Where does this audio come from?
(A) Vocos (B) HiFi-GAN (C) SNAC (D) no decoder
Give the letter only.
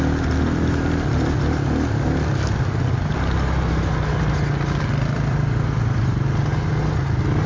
D